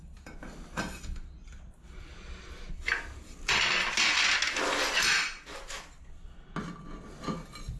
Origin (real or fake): real